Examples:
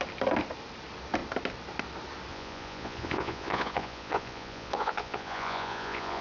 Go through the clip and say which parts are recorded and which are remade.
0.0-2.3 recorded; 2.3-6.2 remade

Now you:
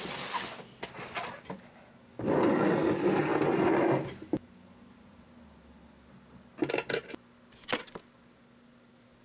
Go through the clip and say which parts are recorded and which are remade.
0.0-9.2 recorded

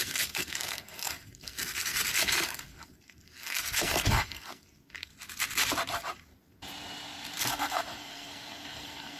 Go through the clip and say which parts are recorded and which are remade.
0.0-5.1 remade; 5.1-7.4 recorded; 7.4-9.2 remade

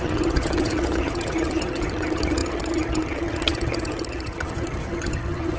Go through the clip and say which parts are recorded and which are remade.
0.0-5.6 remade

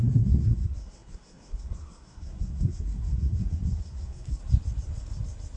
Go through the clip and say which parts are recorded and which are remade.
0.0-4.4 remade; 4.4-5.6 recorded

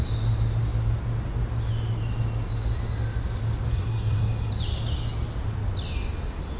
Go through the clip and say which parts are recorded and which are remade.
0.0-3.7 recorded; 3.7-4.5 remade; 4.5-6.6 recorded

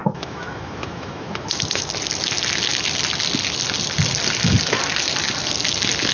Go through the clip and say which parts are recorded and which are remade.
0.0-1.9 remade; 1.9-6.1 recorded